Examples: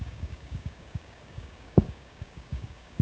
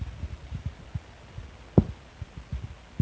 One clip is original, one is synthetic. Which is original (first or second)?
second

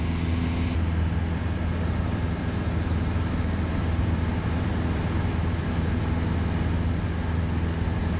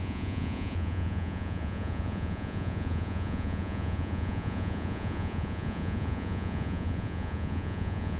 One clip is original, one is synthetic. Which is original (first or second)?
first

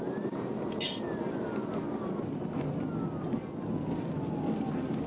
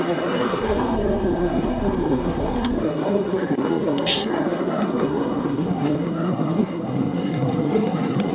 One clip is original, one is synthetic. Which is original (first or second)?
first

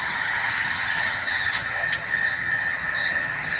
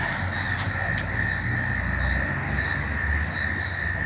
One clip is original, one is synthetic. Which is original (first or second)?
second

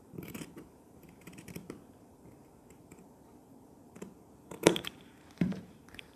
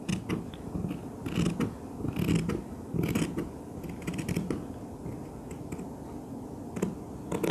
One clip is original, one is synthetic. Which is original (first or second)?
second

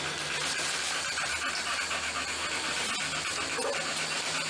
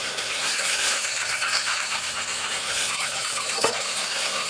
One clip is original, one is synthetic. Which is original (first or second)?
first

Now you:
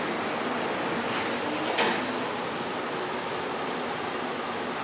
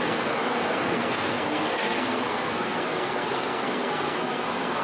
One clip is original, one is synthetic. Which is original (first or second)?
first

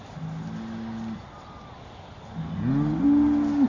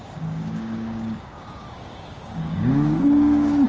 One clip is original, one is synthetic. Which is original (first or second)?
first